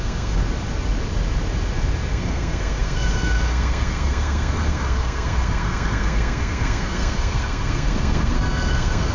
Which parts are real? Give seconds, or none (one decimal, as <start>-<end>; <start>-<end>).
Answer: 0.4-2.1